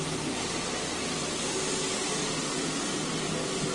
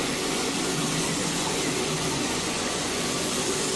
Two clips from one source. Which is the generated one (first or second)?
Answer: second